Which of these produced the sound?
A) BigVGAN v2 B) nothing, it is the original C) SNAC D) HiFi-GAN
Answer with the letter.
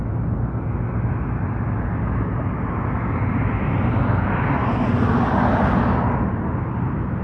B